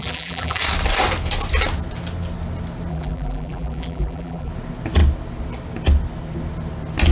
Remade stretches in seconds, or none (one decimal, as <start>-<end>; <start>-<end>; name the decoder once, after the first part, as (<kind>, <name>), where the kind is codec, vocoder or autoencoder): 0.0-0.6 (vocoder, BigVGAN v2); 2.9-4.5